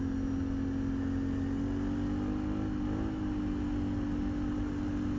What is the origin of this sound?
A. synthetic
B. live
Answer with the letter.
B